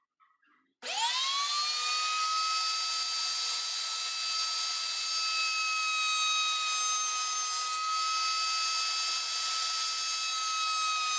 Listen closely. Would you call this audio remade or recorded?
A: recorded